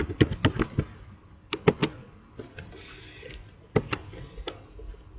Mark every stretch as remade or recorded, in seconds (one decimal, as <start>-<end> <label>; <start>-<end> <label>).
0.0-5.2 recorded

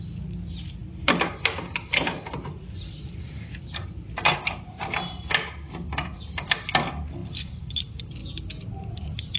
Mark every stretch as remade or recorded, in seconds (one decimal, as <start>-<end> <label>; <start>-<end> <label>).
0.0-7.2 recorded; 7.2-7.7 remade; 7.7-9.4 recorded

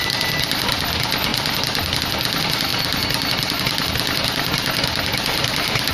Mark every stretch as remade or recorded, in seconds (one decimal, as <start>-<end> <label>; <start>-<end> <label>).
0.0-2.7 recorded; 2.7-5.9 remade

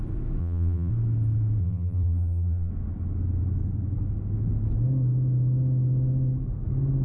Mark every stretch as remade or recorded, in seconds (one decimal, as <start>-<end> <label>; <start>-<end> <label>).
0.0-0.4 recorded; 0.4-0.9 remade; 0.9-1.6 recorded; 1.6-2.7 remade; 2.7-7.0 recorded

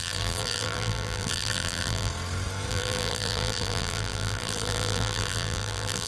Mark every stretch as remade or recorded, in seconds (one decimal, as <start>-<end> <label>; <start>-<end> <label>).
0.0-2.1 remade; 2.1-2.7 recorded; 2.7-6.1 remade

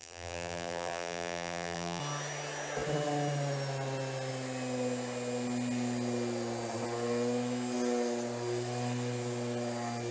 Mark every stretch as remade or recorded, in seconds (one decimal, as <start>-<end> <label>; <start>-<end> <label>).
0.0-2.0 remade; 2.0-10.1 recorded

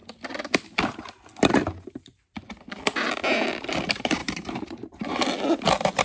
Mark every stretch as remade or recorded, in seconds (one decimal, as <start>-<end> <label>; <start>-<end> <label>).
0.0-4.2 recorded; 4.2-5.1 remade; 5.1-6.0 recorded

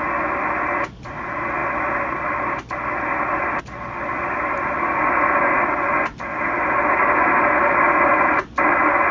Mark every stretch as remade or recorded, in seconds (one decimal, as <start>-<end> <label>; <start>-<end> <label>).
0.0-1.6 recorded; 1.6-3.6 remade; 3.6-9.1 recorded